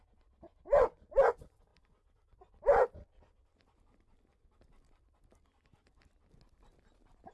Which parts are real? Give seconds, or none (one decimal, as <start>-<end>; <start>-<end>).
0.0-7.3